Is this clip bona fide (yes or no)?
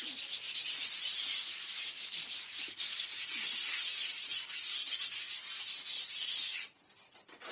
yes